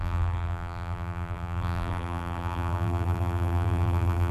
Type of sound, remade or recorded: remade